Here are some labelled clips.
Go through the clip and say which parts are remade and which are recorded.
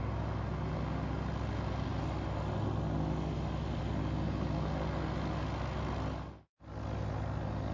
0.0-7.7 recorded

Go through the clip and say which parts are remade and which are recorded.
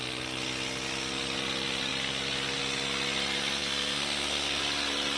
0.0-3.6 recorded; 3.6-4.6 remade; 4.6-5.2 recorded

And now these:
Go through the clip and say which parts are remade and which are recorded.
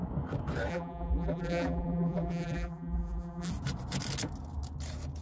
0.0-0.7 recorded; 0.7-3.5 remade; 3.5-5.2 recorded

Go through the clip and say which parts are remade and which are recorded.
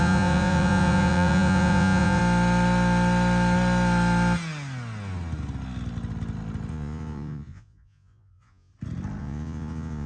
0.0-2.2 remade; 2.2-6.7 recorded; 6.7-8.7 remade; 8.7-9.2 recorded; 9.2-10.1 remade